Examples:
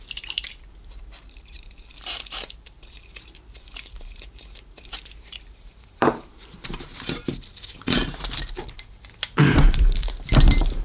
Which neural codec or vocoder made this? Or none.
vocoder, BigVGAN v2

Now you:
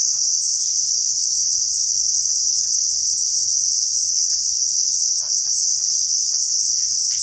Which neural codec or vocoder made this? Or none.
codec, HILCodec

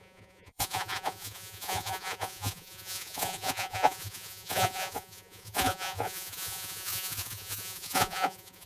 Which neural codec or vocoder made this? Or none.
vocoder, Vocos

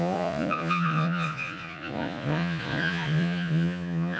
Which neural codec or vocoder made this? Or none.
vocoder, Vocos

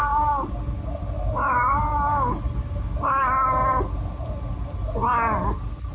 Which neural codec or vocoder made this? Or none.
none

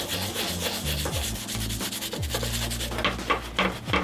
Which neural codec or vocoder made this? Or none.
none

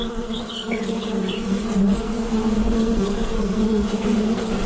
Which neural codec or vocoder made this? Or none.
codec, SNAC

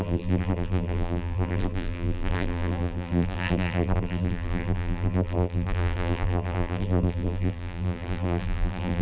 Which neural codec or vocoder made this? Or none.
vocoder, BigVGAN v2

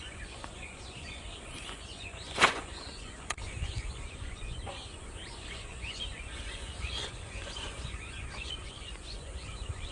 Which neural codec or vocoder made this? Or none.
vocoder, Vocos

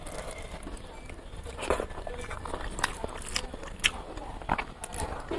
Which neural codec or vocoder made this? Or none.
none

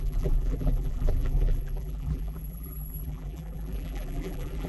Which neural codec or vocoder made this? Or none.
vocoder, BigVGAN v2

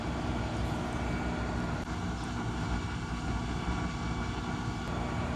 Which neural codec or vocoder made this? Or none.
none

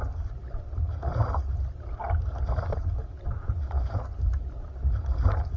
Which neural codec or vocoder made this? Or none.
none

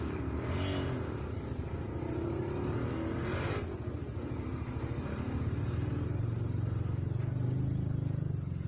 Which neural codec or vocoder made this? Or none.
none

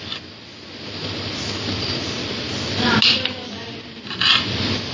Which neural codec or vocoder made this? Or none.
none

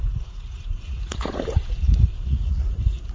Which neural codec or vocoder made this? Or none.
vocoder, Vocos